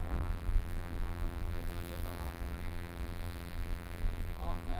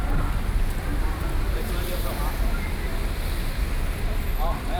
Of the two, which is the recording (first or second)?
second